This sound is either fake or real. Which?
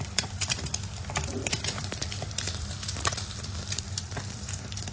fake